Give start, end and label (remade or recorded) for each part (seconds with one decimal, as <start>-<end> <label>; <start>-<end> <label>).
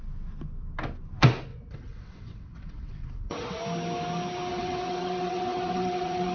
0.0-1.5 recorded; 1.5-3.6 remade; 3.6-4.5 recorded; 4.5-6.3 remade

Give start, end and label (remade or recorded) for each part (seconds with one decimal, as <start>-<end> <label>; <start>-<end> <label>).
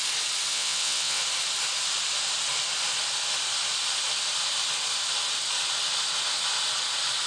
0.0-0.5 recorded; 0.5-1.2 remade; 1.2-7.3 recorded